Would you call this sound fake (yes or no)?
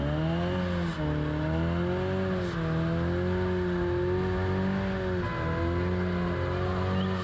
no